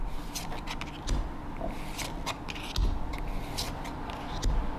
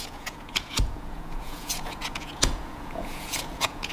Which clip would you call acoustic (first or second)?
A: first